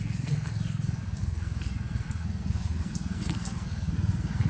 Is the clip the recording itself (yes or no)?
no